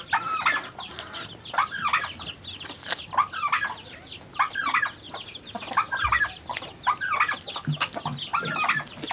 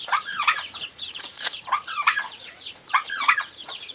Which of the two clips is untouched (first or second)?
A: first